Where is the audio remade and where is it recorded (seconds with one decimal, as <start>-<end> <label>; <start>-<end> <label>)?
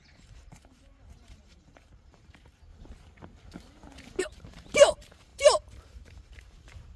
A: 0.0-2.7 remade; 2.7-4.2 recorded; 4.2-7.0 remade